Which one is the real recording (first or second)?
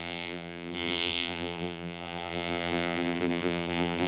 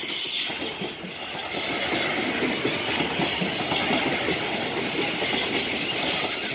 second